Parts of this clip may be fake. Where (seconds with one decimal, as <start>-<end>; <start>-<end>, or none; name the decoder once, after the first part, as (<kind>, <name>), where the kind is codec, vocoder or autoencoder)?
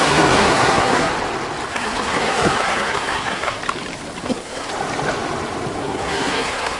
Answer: 0.0-1.1 (codec, SNAC); 1.7-3.6; 4.2-4.7; 5.8-6.8